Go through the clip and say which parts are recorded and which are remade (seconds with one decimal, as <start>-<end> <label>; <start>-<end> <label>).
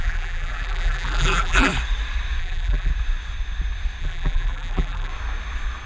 0.0-1.7 remade; 1.7-2.4 recorded; 2.4-2.9 remade; 2.9-4.0 recorded; 4.0-5.1 remade; 5.1-5.9 recorded